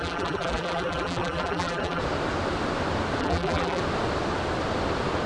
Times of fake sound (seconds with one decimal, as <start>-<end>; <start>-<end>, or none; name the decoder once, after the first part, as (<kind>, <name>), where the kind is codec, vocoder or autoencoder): 0.0-2.0 (vocoder, BigVGAN v2); 3.2-3.8